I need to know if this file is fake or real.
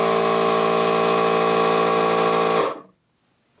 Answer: real